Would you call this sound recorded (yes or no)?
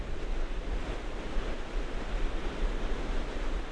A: yes